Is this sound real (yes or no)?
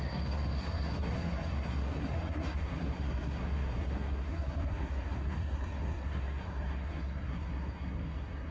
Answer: no